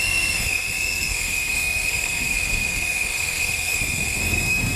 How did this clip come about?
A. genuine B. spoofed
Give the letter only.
B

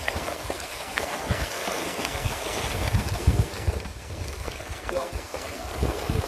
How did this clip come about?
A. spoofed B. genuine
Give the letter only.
A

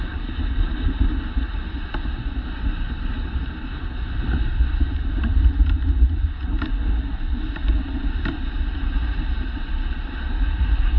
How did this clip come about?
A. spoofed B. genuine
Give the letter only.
B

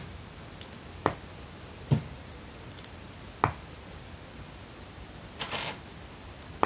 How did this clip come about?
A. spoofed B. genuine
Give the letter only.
B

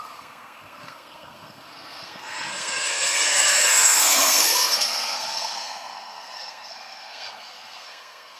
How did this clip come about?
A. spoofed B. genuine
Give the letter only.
A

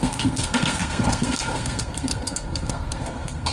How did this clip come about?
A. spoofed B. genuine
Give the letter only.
A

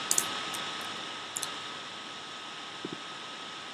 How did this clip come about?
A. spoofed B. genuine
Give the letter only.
B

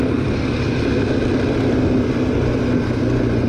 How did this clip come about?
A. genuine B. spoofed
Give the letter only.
A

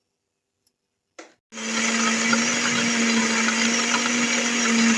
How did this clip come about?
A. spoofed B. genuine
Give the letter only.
B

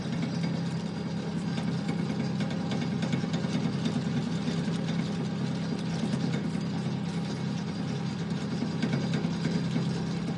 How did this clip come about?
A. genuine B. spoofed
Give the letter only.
A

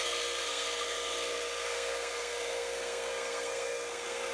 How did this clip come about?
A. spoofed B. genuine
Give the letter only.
A